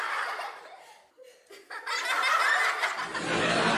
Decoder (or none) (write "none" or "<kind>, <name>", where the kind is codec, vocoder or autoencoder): none